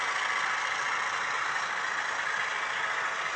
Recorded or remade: recorded